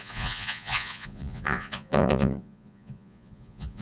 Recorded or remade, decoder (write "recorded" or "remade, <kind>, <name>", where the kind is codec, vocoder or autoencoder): remade, vocoder, Vocos